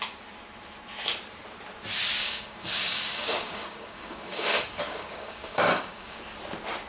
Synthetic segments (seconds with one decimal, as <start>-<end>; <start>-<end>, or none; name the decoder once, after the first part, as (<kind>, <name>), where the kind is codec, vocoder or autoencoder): 2.2-6.2 (codec, DAC)